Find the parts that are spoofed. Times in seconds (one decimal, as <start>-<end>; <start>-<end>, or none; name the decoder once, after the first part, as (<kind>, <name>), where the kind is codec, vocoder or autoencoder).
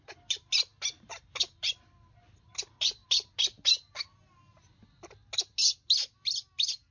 none